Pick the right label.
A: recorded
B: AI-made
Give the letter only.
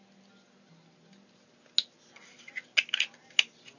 A